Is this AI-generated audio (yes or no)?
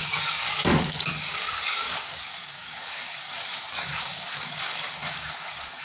yes